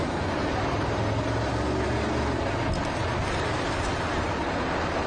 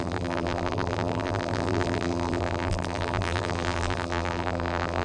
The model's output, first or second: second